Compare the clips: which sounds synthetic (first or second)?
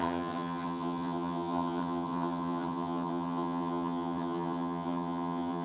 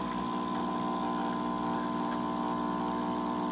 first